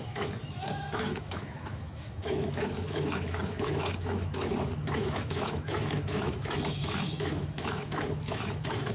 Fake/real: fake